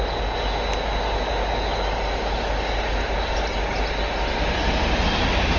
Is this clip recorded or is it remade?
recorded